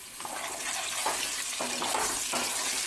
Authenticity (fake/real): real